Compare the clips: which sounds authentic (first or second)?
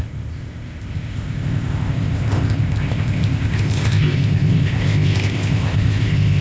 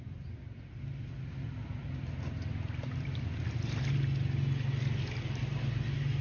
second